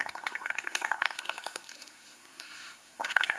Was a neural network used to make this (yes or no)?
yes